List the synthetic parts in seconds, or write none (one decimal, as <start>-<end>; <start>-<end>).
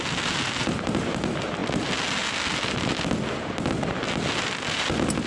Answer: none